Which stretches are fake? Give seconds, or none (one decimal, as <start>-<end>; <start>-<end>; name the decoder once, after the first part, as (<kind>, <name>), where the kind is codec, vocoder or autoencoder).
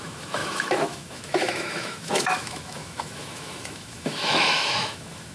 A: 0.0-5.3 (autoencoder, DAC-VAE)